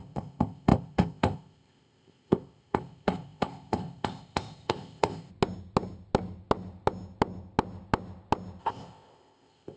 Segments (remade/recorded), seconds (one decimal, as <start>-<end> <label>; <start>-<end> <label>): 0.0-5.3 remade; 5.3-8.6 recorded; 8.6-9.8 remade